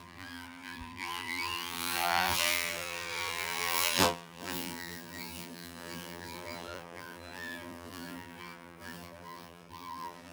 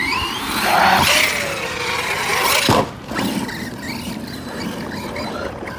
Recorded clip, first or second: second